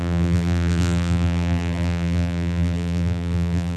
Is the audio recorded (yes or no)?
no